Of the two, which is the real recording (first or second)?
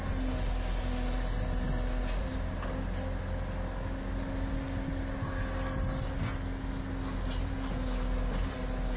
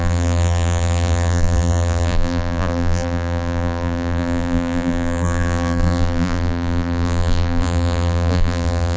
first